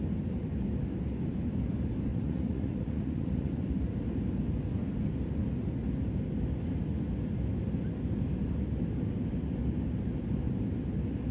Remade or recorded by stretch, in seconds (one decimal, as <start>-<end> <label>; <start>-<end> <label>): 0.0-2.1 recorded; 2.1-3.5 remade; 3.5-11.3 recorded